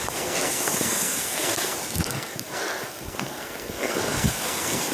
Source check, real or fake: fake